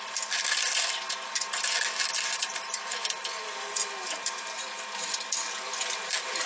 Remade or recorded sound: recorded